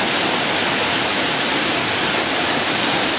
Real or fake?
real